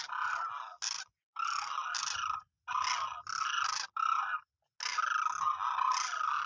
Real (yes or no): yes